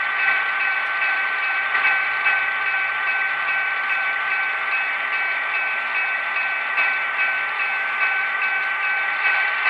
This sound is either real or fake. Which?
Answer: fake